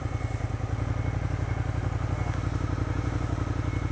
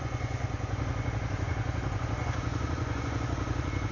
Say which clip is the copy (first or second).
second